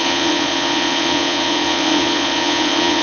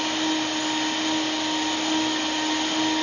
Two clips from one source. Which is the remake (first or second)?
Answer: first